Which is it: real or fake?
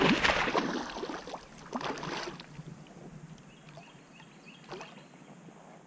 real